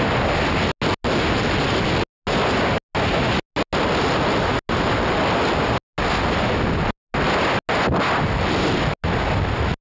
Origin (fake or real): real